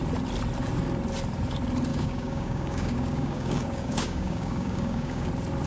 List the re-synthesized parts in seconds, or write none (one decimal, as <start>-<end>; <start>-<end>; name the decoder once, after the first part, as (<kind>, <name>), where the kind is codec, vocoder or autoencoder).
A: 1.9-5.3 (codec, DAC)